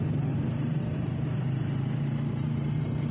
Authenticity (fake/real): fake